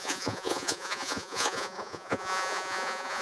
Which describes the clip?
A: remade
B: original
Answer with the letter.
A